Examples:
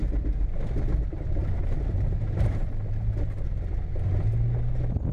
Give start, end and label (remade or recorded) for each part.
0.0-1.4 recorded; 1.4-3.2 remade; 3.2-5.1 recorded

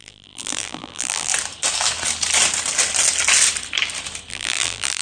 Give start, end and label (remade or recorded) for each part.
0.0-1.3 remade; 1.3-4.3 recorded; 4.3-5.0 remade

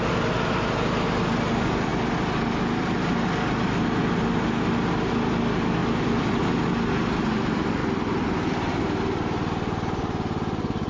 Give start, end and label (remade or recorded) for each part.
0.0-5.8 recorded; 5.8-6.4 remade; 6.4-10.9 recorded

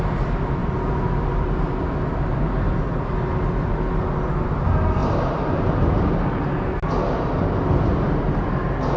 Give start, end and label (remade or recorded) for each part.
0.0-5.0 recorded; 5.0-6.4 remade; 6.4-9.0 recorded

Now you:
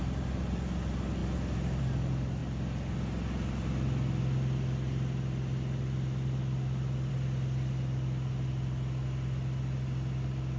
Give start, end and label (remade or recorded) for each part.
0.0-10.6 recorded

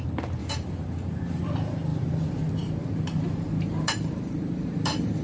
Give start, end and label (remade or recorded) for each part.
0.0-0.4 recorded; 0.4-1.2 remade; 1.2-1.9 recorded; 1.9-5.2 remade